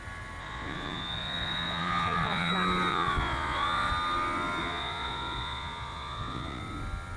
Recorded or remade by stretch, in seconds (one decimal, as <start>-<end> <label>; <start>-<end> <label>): 0.0-0.4 recorded; 0.4-2.5 remade; 2.5-2.9 recorded; 2.9-3.9 remade; 3.9-4.6 recorded; 4.6-6.6 remade; 6.6-7.2 recorded